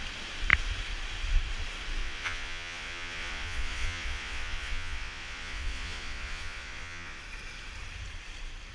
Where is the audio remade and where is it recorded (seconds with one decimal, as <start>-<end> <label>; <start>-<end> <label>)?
0.0-2.0 recorded; 2.0-7.2 remade; 7.2-8.7 recorded